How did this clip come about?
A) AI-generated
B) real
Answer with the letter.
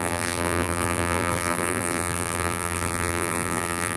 A